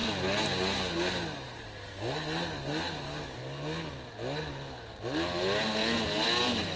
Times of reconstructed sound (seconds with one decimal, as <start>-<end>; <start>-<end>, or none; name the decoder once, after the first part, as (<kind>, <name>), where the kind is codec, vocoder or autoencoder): none